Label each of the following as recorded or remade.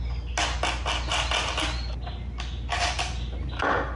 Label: recorded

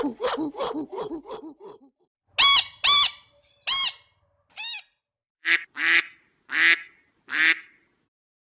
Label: recorded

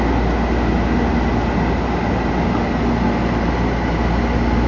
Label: recorded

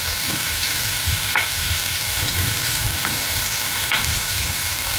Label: remade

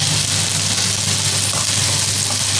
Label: recorded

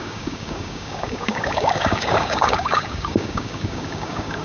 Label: remade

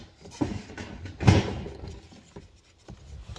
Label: recorded